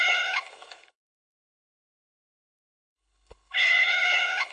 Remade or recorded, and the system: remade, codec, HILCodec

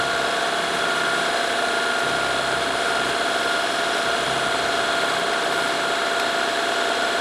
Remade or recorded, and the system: recorded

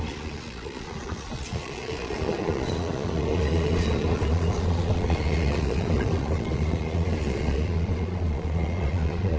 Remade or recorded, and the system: remade, vocoder, Vocos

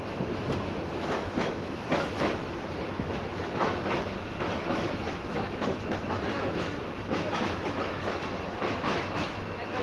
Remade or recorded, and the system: remade, autoencoder, DAC-VAE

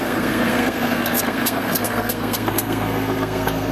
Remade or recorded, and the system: remade, codec, SNAC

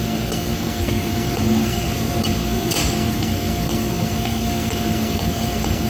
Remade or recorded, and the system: remade, codec, SNAC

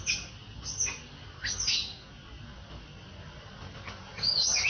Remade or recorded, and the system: recorded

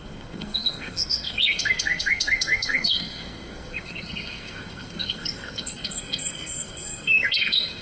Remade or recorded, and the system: remade, codec, SNAC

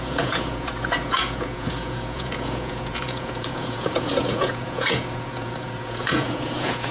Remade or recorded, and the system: remade, vocoder, Vocos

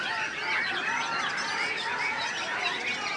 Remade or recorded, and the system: recorded